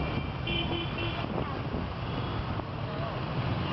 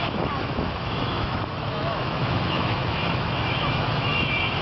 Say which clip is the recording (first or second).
first